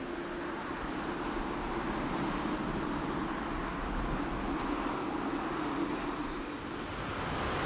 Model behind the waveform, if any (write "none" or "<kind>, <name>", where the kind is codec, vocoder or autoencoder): none